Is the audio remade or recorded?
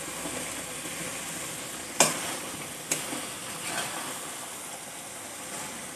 recorded